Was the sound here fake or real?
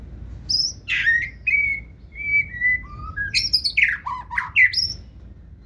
real